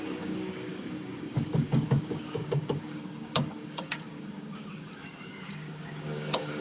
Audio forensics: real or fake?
fake